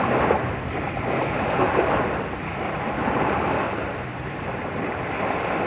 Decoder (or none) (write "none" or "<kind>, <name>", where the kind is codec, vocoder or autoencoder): none